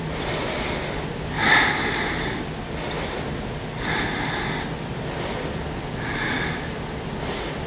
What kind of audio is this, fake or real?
real